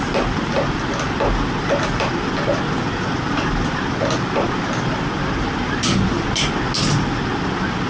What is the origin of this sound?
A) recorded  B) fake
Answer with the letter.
A